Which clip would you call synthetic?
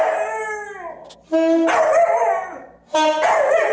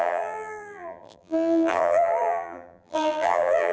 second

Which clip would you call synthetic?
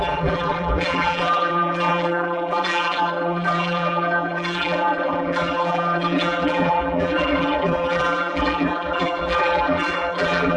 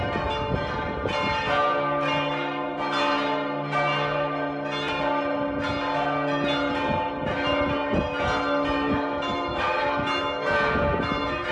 first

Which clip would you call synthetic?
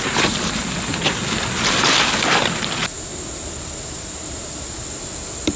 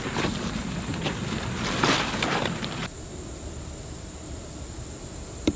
second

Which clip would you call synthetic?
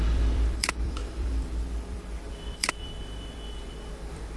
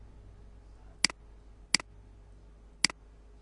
first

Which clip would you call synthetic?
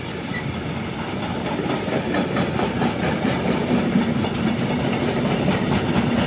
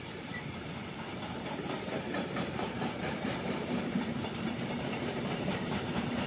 second